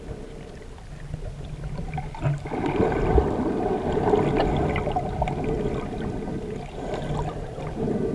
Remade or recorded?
recorded